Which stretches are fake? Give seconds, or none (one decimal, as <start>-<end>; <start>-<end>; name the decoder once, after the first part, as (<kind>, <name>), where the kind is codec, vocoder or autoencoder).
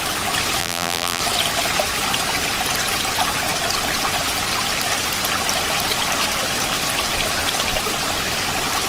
0.6-1.2 (vocoder, BigVGAN v2)